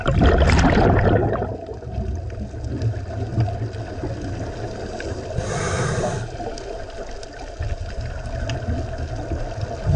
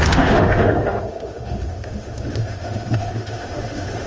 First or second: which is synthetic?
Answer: second